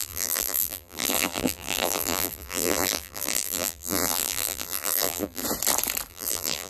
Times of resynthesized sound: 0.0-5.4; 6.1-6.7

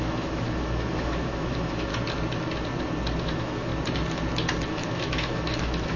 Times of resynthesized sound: 0.0-1.9; 3.2-3.7; 4.7-6.0

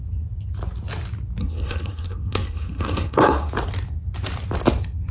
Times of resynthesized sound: 1.4-3.5